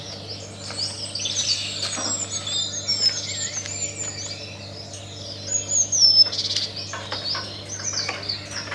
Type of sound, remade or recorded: recorded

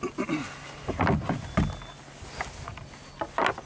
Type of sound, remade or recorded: recorded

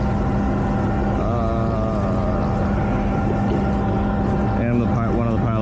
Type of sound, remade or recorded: recorded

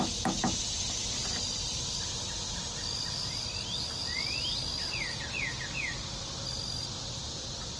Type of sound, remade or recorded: recorded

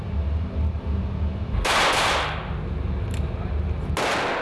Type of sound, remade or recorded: recorded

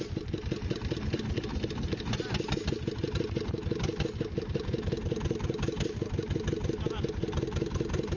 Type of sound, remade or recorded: recorded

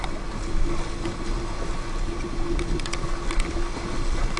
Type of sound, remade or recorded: recorded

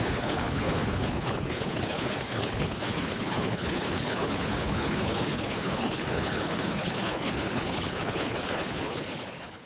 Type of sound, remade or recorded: remade